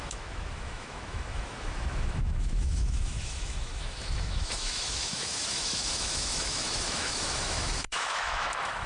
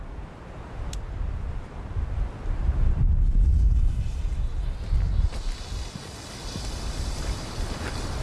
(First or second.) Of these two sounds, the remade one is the first